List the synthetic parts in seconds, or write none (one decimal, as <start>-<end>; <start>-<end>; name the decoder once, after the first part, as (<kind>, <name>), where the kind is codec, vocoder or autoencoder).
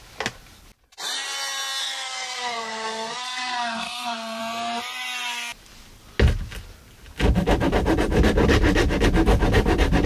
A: 1.8-4.4 (codec, SNAC)